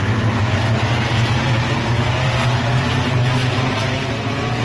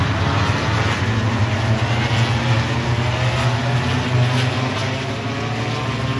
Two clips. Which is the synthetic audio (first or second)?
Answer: first